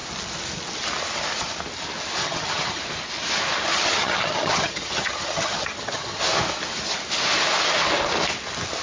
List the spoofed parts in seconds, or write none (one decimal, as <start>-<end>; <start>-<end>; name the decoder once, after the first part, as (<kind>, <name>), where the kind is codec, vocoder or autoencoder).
2.2-2.8 (vocoder, HiFi-GAN); 3.7-6.2